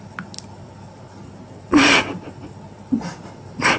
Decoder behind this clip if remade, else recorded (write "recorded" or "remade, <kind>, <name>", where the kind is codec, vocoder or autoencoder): recorded